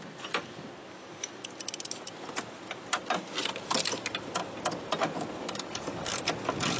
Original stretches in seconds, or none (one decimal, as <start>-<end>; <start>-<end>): 0.0-5.4; 6.1-6.8